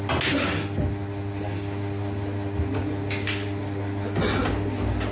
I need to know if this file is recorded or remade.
recorded